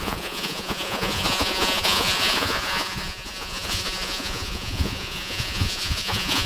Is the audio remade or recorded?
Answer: remade